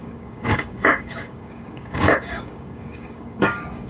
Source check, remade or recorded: remade